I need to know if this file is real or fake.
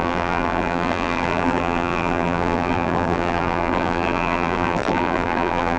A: fake